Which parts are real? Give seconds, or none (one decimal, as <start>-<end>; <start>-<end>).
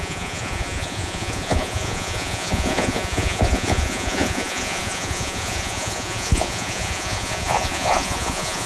none